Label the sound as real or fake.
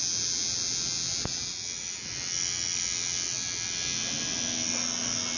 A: real